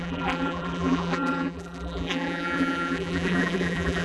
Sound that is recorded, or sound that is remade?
remade